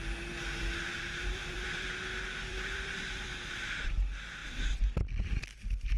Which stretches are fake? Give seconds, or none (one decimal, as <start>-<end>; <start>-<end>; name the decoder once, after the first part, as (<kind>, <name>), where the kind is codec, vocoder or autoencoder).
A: 0.9-3.6 (vocoder, BigVGAN v2)